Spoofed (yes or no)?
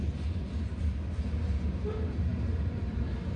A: no